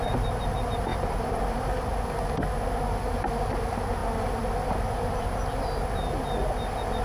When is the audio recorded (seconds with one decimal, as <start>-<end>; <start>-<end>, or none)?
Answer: 0.0-0.9; 2.0-7.0